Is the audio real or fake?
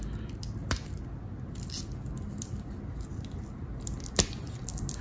real